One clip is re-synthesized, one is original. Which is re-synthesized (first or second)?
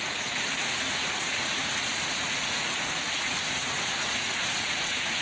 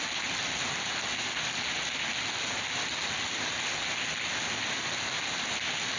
first